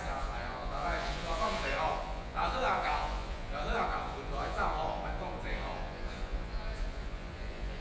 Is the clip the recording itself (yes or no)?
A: no